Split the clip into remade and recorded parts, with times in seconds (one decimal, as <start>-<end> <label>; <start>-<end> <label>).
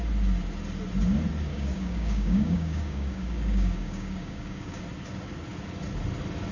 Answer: 0.0-1.5 recorded; 1.5-4.8 remade; 4.8-6.5 recorded